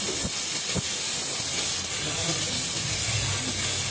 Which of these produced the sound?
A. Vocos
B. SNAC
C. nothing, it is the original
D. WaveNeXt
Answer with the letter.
C